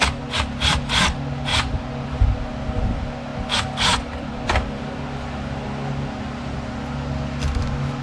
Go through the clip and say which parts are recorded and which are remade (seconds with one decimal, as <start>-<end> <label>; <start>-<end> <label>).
0.0-1.5 recorded; 1.5-2.5 remade; 2.5-8.0 recorded